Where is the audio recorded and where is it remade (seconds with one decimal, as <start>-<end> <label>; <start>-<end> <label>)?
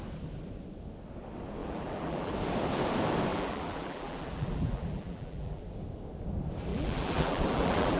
0.0-1.6 recorded; 1.6-2.3 remade; 2.3-3.3 recorded; 3.3-5.6 remade; 5.6-6.7 recorded; 6.7-8.0 remade